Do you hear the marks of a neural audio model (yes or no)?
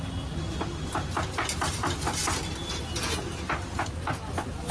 no